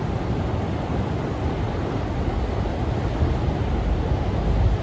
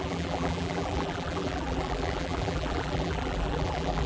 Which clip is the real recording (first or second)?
first